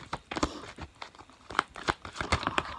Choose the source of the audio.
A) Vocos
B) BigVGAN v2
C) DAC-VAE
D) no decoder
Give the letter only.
D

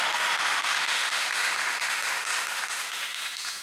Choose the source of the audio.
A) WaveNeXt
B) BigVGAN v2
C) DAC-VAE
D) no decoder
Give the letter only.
C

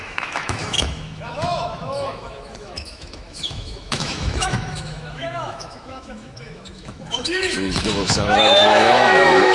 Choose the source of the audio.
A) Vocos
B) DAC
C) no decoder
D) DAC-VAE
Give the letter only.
D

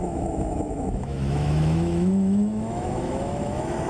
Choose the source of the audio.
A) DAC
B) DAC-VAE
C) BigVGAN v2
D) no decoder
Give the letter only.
B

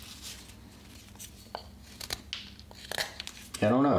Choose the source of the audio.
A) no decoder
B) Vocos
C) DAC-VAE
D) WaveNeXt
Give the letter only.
A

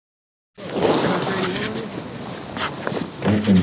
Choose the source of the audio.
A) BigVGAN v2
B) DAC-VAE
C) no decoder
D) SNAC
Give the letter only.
C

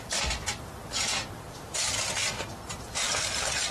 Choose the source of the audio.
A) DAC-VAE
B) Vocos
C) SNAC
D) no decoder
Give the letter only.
D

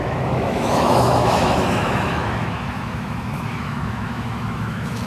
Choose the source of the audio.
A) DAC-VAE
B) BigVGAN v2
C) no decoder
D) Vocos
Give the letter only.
A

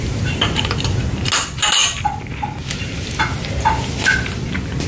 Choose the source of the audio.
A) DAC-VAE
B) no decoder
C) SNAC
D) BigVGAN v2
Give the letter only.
B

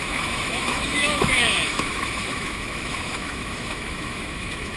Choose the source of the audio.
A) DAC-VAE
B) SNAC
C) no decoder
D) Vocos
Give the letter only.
A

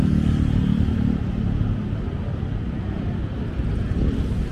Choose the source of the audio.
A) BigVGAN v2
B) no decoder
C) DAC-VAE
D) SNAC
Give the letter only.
B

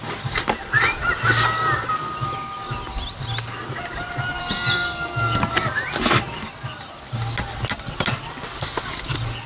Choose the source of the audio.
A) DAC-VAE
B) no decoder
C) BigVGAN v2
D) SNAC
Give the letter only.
B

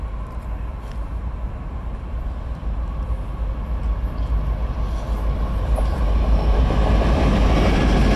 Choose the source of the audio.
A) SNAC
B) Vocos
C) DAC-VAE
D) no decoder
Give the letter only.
D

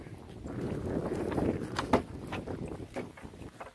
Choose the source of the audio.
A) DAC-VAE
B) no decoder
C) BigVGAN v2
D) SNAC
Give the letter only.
B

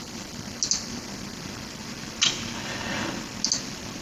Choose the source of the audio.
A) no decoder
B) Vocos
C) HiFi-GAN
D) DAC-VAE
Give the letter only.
A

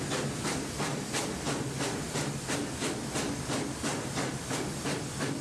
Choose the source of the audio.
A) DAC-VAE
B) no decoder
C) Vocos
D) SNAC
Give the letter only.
B